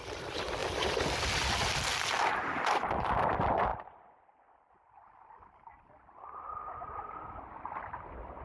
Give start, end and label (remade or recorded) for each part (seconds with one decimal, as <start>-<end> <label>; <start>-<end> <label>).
0.0-8.4 recorded